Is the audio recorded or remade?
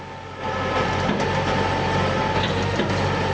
recorded